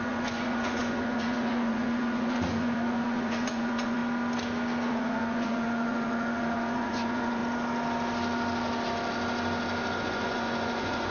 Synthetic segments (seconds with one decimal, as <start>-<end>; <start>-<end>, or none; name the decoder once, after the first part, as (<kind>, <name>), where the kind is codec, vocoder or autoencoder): 0.0-4.0 (vocoder, Vocos); 4.9-7.4; 10.0-11.1